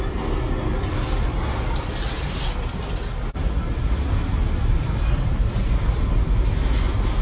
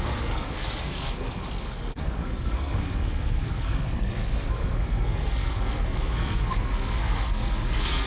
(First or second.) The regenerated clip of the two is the second